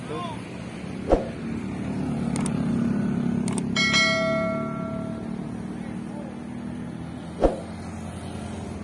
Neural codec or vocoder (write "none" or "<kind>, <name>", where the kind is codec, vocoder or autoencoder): none